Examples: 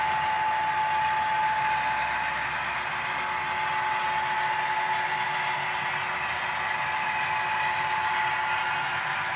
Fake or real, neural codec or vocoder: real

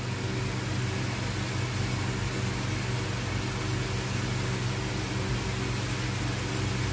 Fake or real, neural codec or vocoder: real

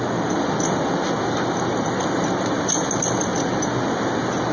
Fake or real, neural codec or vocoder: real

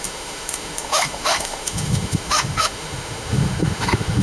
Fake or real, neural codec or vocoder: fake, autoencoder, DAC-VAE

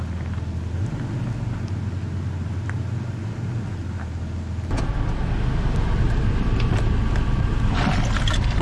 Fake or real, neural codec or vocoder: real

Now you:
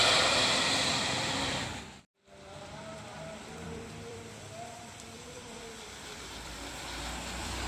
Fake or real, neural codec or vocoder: fake, vocoder, BigVGAN v2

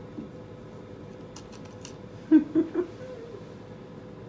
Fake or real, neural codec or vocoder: real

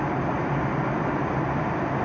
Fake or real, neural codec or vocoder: real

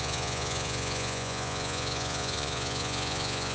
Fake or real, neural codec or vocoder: fake, vocoder, Vocos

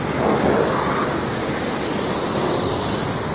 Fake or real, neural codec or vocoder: real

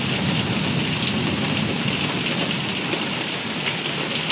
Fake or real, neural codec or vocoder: real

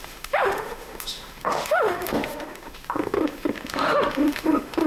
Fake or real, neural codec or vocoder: fake, autoencoder, DAC-VAE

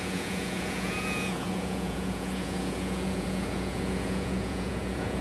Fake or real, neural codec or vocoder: fake, vocoder, Vocos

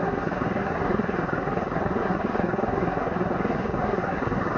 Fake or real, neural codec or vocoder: fake, codec, SNAC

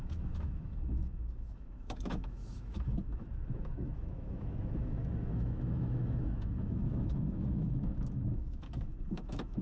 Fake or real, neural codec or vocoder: fake, autoencoder, DAC-VAE